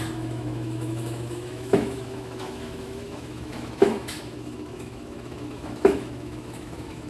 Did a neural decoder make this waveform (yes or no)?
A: yes